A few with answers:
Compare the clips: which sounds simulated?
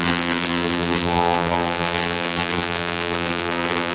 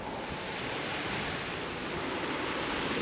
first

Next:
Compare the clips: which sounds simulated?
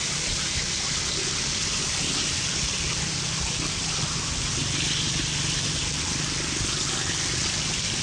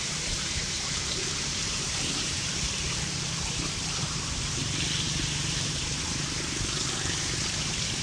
second